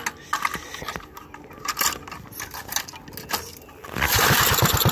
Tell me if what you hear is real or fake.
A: real